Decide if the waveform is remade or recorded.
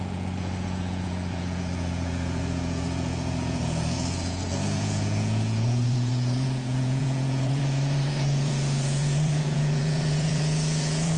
remade